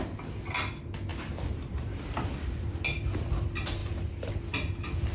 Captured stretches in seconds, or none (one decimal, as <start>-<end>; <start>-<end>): 0.0-1.1; 2.2-3.8; 4.3-5.1